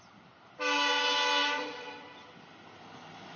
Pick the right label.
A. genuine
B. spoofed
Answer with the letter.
A